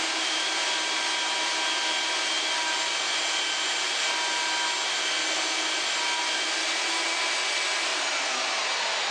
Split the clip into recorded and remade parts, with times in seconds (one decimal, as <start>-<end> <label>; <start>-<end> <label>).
0.0-9.1 recorded